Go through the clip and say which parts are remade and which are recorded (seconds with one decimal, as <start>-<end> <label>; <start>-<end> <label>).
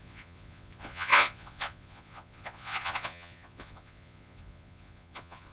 0.0-5.5 remade